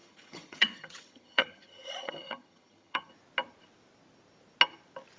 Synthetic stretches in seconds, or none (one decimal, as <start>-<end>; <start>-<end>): 0.0-3.1